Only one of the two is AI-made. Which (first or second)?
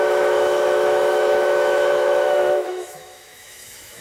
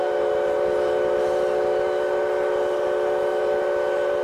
first